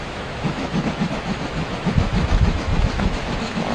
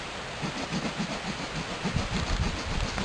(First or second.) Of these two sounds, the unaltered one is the second